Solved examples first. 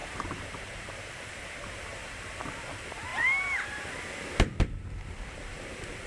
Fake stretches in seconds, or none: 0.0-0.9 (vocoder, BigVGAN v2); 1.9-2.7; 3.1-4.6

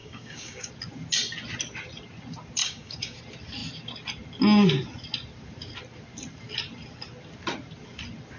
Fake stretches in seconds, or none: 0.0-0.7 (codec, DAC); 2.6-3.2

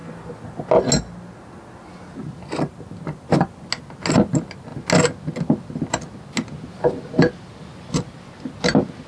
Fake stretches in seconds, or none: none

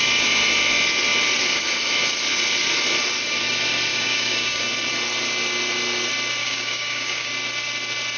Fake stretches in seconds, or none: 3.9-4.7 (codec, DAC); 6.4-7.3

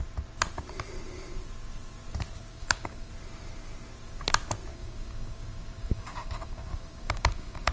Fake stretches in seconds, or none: 2.5-3.1 (codec, DAC); 4.7-7.7

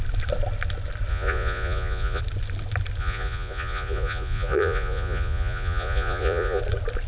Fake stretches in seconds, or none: 1.1-2.2 (vocoder, Vocos); 3.0-6.6

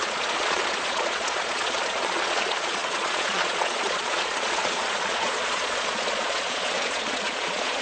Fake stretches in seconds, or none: 0.0-7.8 (vocoder, Vocos)

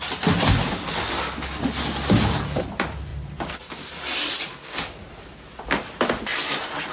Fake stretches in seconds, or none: none